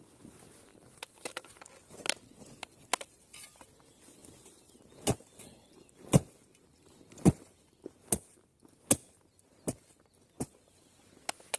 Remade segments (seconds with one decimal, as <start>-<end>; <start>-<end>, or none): none